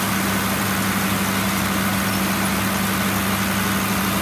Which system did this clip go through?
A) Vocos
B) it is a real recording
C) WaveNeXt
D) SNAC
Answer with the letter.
B